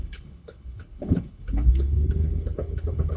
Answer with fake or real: fake